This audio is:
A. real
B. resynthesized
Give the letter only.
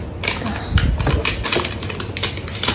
A